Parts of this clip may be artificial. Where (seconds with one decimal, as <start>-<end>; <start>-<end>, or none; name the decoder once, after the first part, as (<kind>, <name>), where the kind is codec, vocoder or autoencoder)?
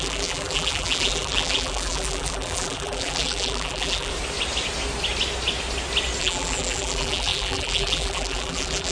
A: 0.0-4.1 (vocoder, BigVGAN v2); 6.2-8.9